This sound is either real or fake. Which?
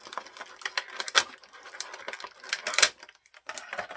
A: real